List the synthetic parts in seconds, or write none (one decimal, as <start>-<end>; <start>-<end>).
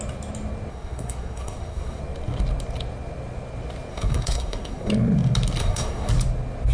0.7-2.0; 3.9-4.9; 5.6-6.1